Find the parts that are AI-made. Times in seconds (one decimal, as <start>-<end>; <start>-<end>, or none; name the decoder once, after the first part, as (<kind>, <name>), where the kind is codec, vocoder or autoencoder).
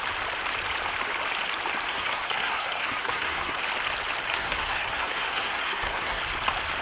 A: 1.9-3.6 (codec, SNAC); 4.3-6.2